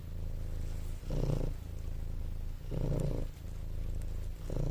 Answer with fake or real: real